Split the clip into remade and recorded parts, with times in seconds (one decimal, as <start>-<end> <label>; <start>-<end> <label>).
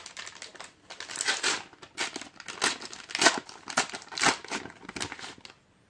0.0-5.9 recorded